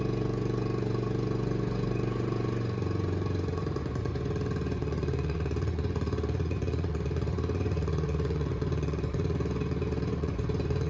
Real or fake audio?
fake